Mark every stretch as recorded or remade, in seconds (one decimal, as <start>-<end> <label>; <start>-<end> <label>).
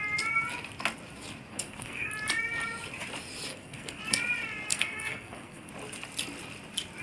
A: 0.0-1.5 recorded; 1.5-2.1 remade; 2.1-3.5 recorded; 3.5-4.0 remade; 4.0-4.7 recorded; 4.7-5.7 remade; 5.7-7.0 recorded